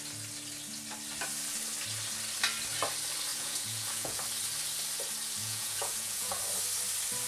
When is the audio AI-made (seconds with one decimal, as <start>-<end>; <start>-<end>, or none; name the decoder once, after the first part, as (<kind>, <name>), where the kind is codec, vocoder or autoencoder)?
3.3-4.2 (vocoder, Vocos); 5.4-6.4